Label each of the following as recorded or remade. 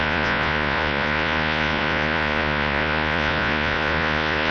remade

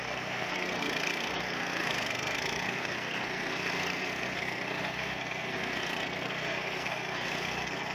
remade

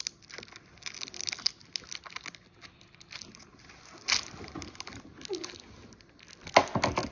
recorded